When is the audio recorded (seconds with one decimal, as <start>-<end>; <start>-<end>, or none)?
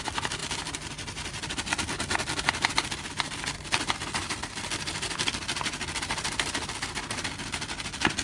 0.0-0.4; 1.5-4.2; 5.5-8.2